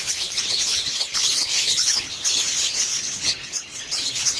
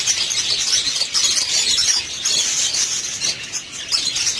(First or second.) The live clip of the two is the second